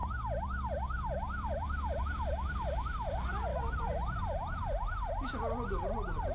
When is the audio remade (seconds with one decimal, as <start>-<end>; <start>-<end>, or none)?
0.0-2.0